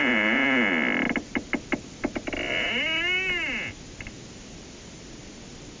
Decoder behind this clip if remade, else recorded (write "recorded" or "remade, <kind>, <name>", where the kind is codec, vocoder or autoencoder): recorded